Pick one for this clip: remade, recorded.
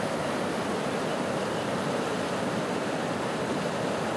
recorded